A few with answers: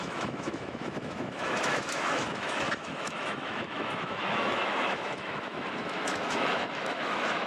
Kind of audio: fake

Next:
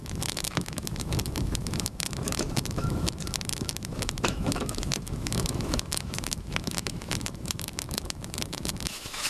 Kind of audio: fake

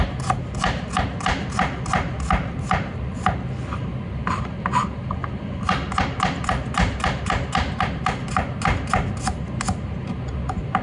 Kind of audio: real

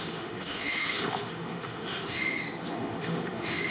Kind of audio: fake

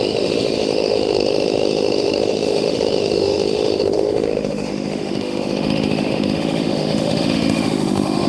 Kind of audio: fake